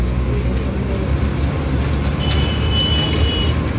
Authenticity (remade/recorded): recorded